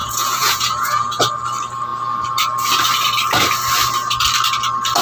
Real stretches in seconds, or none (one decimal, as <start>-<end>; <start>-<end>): 1.2-5.0